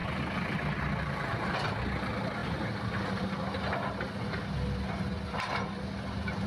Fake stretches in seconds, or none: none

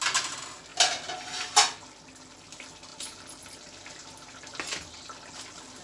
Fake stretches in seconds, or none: none

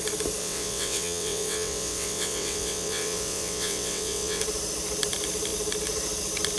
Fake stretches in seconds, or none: 0.4-4.4 (vocoder, WaveNeXt)